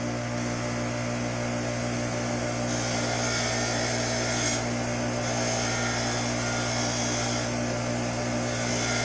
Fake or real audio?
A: real